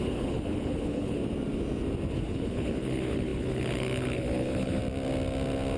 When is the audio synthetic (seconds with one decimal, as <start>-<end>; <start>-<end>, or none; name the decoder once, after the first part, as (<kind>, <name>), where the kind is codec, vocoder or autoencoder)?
0.0-1.2 (codec, HILCodec); 2.1-4.8